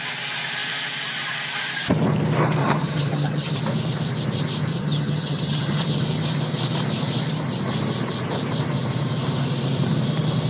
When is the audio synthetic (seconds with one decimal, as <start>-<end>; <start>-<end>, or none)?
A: 2.6-3.6; 4.7-6.0